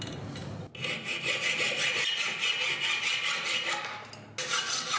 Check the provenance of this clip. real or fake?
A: real